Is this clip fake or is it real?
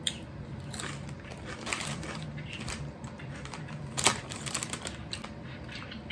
fake